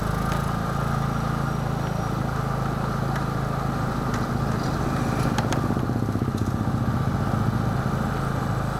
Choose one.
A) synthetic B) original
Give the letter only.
B